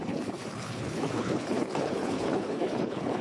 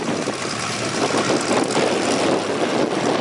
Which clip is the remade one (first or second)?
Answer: first